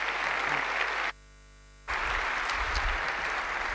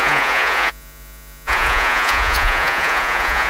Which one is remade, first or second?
second